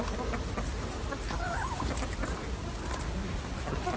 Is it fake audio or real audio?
real